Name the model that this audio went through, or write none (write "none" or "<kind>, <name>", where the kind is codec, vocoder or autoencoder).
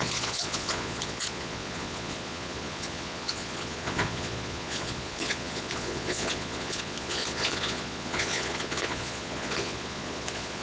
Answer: vocoder, Vocos